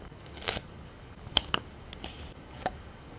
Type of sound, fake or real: fake